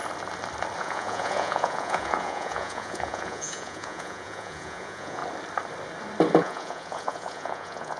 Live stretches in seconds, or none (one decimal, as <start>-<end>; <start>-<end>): 0.0-0.8; 5.2-6.4